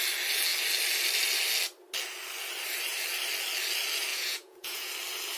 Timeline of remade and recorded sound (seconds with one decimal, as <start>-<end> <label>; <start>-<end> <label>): 0.0-4.1 recorded; 4.1-4.9 remade; 4.9-5.4 recorded